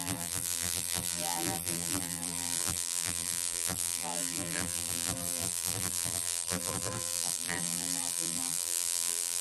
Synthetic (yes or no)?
yes